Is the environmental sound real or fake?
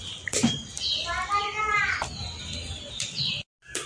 real